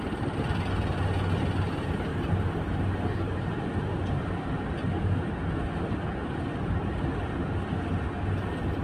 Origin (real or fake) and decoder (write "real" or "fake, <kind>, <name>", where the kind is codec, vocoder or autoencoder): real